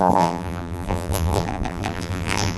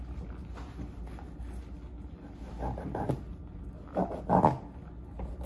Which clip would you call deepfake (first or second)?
first